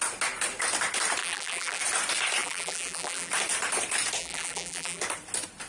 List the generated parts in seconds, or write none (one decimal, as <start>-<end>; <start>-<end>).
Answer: 1.2-1.8; 2.4-3.3; 4.2-5.0